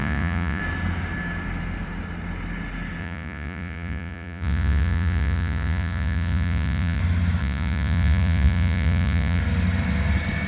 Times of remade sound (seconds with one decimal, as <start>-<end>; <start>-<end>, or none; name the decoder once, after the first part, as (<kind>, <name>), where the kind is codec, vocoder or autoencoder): 0.0-0.6 (vocoder, Vocos); 3.0-7.0; 7.4-9.4